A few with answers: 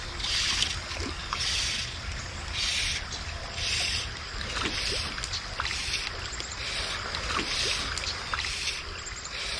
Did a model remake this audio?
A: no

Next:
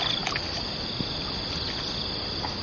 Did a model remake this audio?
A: no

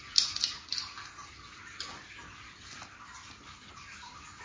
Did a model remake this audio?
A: no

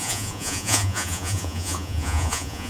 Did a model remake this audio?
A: yes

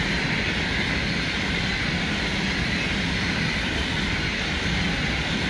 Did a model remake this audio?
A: no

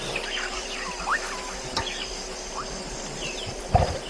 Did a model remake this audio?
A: no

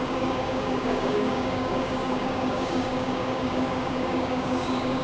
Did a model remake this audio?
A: yes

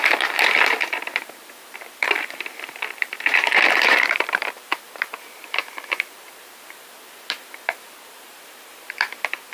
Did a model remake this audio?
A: yes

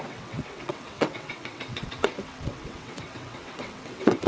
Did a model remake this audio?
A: yes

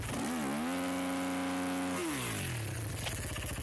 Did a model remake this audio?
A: no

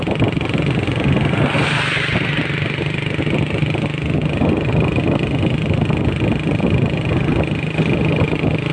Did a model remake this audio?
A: no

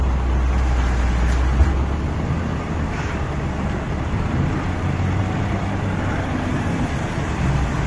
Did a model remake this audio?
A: no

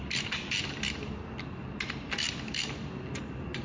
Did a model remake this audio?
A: no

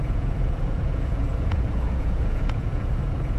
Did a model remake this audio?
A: yes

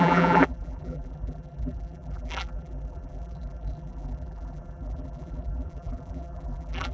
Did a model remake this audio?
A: yes